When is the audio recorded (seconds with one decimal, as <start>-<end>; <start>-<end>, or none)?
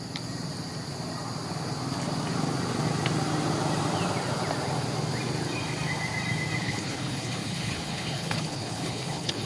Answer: 0.0-6.6